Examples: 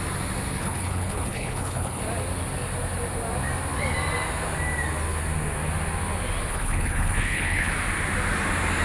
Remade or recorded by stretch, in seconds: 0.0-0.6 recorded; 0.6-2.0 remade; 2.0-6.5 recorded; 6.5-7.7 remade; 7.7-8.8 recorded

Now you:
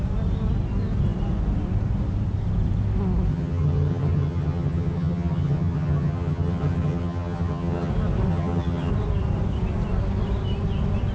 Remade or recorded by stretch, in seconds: 0.0-3.3 recorded; 3.3-7.9 remade; 7.9-8.3 recorded; 8.3-8.9 remade; 8.9-11.1 recorded

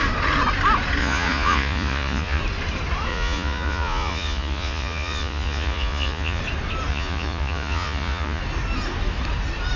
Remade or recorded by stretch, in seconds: 0.0-1.0 recorded; 1.0-2.4 remade; 2.4-3.1 recorded; 3.1-6.4 remade; 6.4-6.9 recorded; 6.9-8.4 remade; 8.4-9.8 recorded

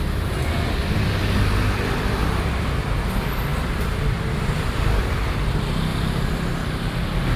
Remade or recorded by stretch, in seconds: 0.0-2.2 remade; 2.2-3.0 recorded; 3.0-5.9 remade; 5.9-7.4 recorded

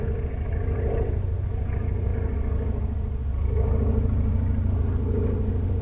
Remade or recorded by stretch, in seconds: 0.0-5.8 recorded

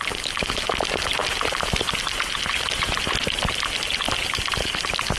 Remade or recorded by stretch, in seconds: 0.0-5.2 recorded

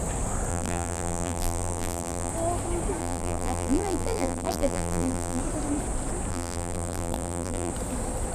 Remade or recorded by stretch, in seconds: 0.0-0.5 recorded; 0.5-2.3 remade; 2.3-3.0 recorded; 3.0-5.4 remade; 5.4-6.3 recorded; 6.3-7.7 remade; 7.7-8.3 recorded